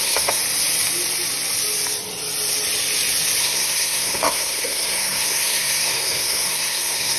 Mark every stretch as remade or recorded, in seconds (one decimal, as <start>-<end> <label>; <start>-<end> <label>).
0.0-0.4 remade; 0.4-3.4 recorded; 3.4-7.2 remade